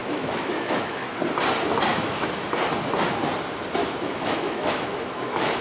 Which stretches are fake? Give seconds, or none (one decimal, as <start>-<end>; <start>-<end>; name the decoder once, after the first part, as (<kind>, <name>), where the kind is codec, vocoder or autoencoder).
0.0-1.2 (autoencoder, DAC-VAE); 1.9-2.5; 3.8-5.6